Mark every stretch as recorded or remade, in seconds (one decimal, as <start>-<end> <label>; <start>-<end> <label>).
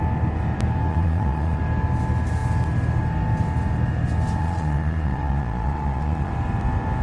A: 0.0-0.9 recorded; 0.9-1.6 remade; 1.6-4.4 recorded; 4.4-6.3 remade; 6.3-7.0 recorded